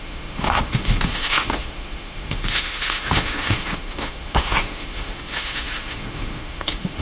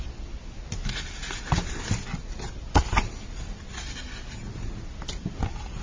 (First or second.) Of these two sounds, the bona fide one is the second